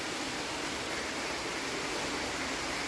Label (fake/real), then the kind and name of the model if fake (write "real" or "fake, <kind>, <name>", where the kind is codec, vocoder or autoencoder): real